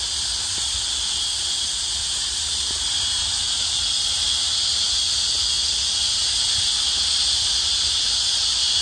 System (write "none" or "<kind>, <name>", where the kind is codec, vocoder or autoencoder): none